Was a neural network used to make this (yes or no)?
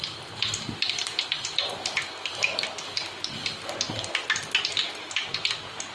no